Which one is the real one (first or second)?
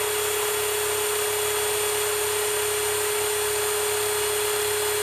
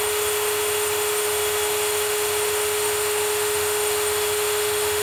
first